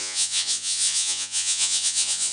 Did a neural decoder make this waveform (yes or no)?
yes